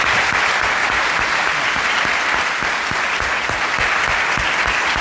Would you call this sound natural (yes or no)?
yes